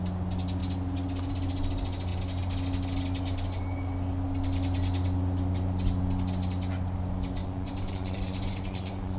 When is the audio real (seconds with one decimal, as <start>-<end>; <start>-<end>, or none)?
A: 0.0-7.4